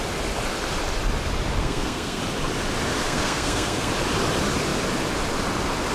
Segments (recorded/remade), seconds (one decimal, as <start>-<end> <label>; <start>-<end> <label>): 0.0-1.6 recorded; 1.6-2.2 remade; 2.2-3.0 recorded; 3.0-3.9 remade; 3.9-5.9 recorded